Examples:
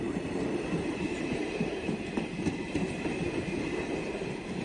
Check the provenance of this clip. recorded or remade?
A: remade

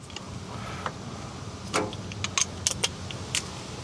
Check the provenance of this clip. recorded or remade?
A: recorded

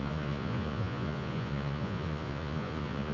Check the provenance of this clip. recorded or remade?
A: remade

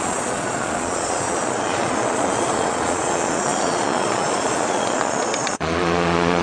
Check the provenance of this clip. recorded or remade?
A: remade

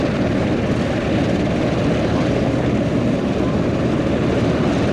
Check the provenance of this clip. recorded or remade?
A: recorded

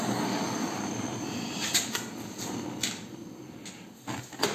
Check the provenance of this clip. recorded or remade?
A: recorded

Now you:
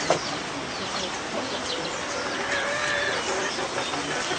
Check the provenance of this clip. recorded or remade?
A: recorded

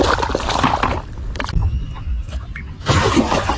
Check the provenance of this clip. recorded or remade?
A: recorded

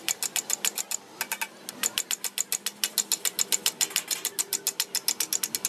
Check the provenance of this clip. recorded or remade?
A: recorded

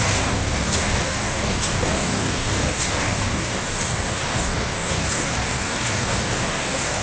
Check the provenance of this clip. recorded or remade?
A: remade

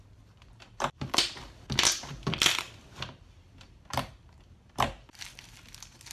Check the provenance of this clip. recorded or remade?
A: remade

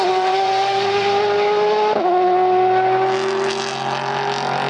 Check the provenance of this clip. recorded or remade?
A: recorded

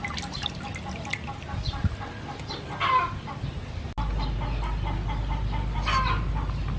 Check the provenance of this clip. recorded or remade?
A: recorded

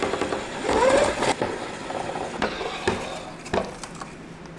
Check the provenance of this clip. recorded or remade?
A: recorded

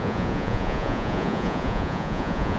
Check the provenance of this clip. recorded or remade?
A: remade